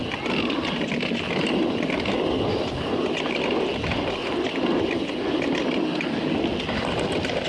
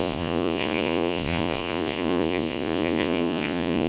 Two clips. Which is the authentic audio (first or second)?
first